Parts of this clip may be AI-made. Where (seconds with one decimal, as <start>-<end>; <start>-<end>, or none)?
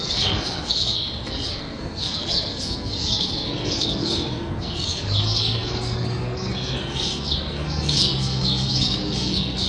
0.0-9.7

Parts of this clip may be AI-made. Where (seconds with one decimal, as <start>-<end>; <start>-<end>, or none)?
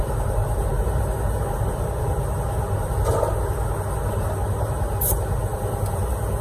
none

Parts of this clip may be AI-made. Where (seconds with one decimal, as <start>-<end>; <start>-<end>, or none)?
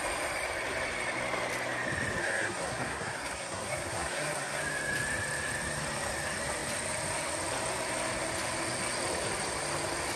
2.2-4.6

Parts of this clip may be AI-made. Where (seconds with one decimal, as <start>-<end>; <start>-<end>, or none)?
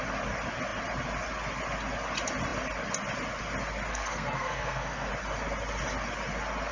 3.9-5.1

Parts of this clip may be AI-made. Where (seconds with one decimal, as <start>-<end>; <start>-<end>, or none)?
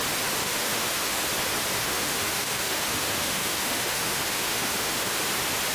0.4-1.2; 1.8-5.2